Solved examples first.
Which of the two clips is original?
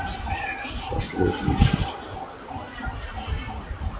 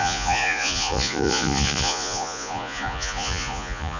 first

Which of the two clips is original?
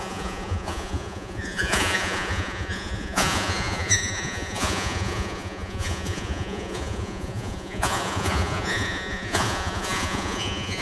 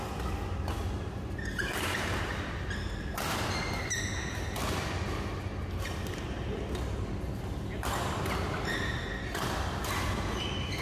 second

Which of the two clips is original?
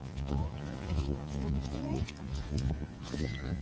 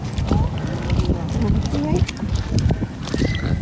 second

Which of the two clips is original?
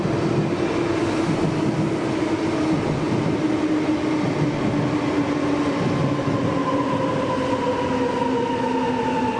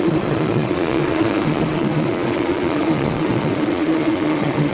first